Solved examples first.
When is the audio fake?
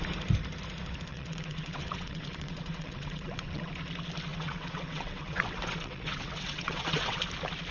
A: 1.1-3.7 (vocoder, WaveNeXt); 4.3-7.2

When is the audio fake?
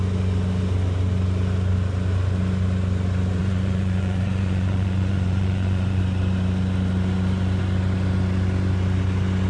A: 3.4-6.0 (vocoder, Vocos)